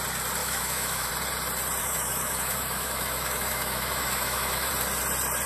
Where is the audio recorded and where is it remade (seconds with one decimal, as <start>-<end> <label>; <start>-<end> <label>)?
0.0-0.4 recorded; 0.4-1.1 remade; 1.1-1.8 recorded; 1.8-4.7 remade; 4.7-5.5 recorded